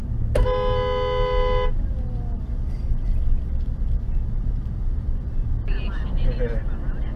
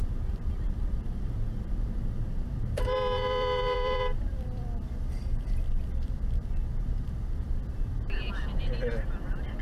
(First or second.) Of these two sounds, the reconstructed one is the second